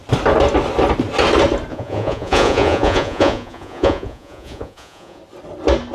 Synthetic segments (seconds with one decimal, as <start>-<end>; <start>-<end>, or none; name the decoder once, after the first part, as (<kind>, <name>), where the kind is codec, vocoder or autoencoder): 1.7-5.2 (vocoder, Vocos)